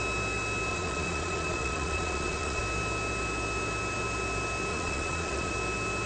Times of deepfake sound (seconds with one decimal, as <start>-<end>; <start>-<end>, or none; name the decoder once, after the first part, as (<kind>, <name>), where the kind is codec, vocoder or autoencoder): 0.7-2.6 (vocoder, Vocos); 4.7-5.5